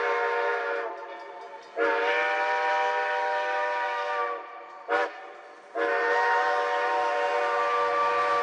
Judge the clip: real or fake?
real